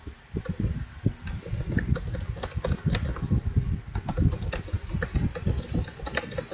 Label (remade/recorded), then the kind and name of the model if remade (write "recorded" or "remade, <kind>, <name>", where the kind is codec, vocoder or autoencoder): recorded